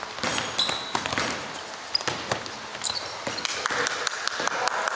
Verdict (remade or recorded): recorded